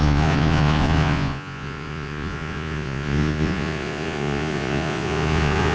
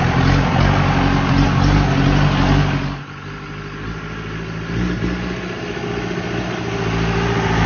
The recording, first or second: second